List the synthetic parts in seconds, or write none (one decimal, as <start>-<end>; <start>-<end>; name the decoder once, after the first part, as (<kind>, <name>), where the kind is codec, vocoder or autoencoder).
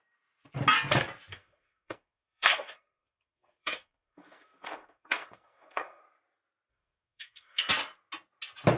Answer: 1.3-6.0 (codec, SNAC); 6.7-7.7